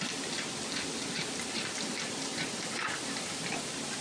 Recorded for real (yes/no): yes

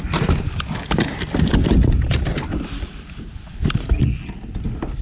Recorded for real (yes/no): yes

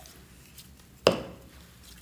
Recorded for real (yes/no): yes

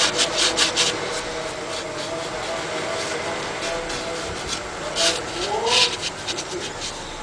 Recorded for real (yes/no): yes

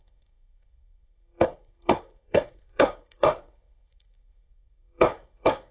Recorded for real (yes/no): no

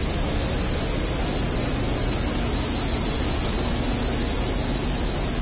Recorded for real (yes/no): yes